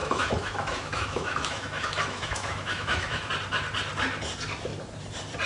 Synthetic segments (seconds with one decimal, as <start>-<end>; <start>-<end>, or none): 0.0-3.3